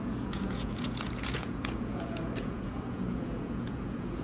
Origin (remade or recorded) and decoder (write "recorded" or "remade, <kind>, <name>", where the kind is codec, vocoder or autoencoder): remade, vocoder, Vocos